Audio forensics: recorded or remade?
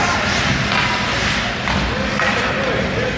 recorded